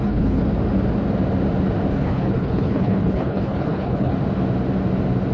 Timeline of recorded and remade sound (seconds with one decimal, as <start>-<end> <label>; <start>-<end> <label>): 0.0-0.4 remade; 0.4-1.9 recorded; 1.9-4.1 remade; 4.1-5.3 recorded